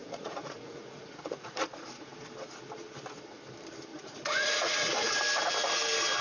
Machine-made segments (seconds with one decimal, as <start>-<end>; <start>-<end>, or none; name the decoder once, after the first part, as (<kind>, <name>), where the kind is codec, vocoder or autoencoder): 0.0-2.1 (vocoder, Vocos); 3.9-5.2